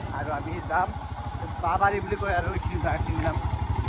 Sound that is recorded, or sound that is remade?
recorded